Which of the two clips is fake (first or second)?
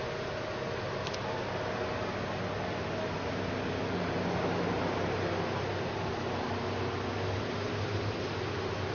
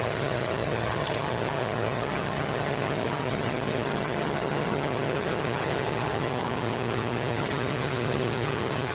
second